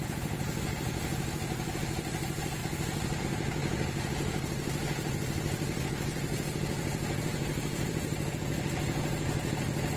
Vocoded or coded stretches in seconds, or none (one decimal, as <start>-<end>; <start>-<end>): 2.6-3.2; 3.6-8.3